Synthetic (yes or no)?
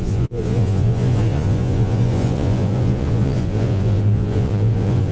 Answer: yes